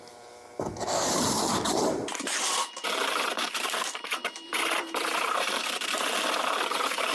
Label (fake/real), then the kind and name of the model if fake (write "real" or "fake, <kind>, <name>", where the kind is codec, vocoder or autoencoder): fake, vocoder, BigVGAN v2